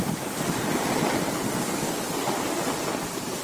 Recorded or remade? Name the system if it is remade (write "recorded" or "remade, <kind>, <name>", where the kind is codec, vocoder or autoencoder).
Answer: remade, vocoder, BigVGAN v2